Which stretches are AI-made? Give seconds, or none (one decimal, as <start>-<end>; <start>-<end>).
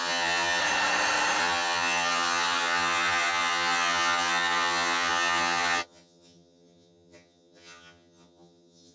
0.0-0.6; 1.4-8.9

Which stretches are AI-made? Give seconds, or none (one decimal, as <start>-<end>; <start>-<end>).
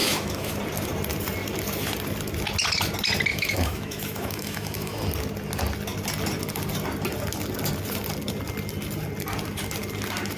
0.0-0.5; 3.3-5.0